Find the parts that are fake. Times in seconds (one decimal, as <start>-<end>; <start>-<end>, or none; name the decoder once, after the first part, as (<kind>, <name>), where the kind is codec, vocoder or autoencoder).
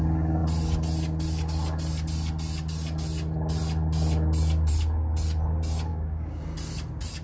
5.9-6.4 (codec, DAC)